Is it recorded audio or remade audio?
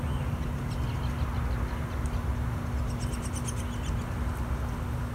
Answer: recorded